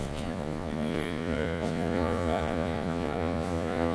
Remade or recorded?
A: remade